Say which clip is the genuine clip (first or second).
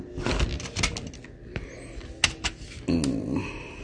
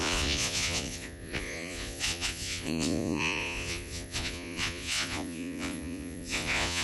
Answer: first